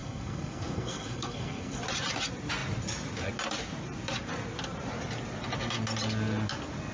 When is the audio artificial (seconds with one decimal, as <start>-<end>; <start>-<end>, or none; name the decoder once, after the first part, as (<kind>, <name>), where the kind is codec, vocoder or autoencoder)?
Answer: 0.0-1.8 (codec, SNAC)